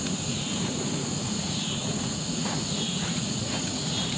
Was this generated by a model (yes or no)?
yes